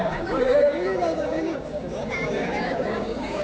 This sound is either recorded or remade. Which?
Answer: remade